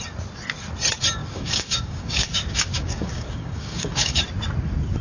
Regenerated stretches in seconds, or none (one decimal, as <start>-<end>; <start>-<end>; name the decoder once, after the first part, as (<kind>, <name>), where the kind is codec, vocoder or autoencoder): 1.2-4.2 (codec, DAC)